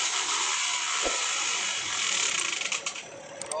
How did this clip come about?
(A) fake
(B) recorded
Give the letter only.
A